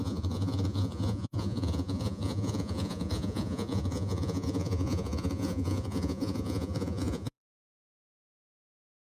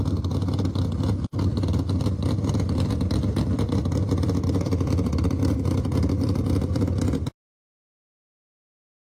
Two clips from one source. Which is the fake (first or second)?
first